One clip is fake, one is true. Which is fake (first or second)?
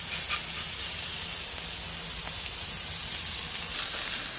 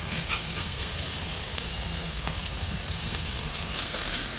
second